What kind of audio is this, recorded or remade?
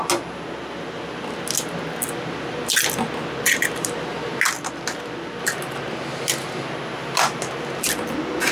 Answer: recorded